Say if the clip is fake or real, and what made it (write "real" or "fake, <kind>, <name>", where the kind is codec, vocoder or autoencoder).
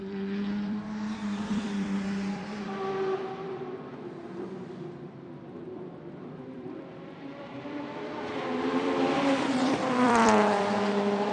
fake, vocoder, BigVGAN v2